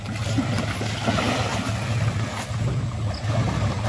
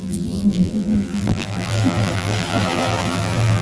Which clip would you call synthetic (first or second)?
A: second